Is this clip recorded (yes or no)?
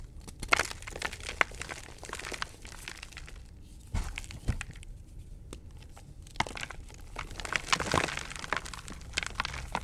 yes